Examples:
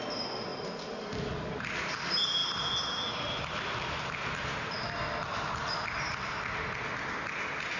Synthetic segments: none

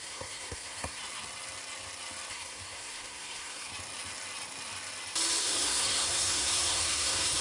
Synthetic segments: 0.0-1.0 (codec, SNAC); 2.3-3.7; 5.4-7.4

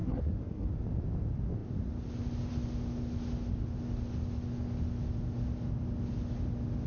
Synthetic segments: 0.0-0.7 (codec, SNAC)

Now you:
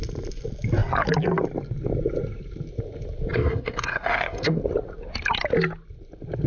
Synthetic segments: 3.3-4.6 (codec, SNAC)

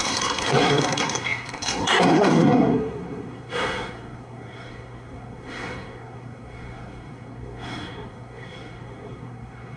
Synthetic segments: 0.0-9.8 (codec, SNAC)

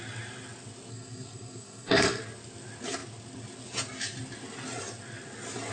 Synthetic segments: 0.9-2.2 (codec, SNAC)

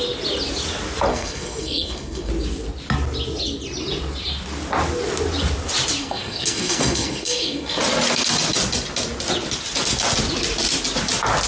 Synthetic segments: 1.1-2.3 (codec, SNAC); 6.0-7.8